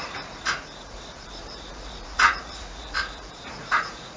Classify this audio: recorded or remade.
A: remade